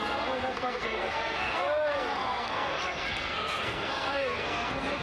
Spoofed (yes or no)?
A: yes